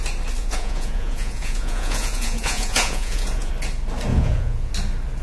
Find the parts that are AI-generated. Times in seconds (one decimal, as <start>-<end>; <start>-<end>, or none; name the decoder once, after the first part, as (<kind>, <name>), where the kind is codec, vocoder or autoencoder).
0.4-3.5 (vocoder, Vocos); 4.1-4.7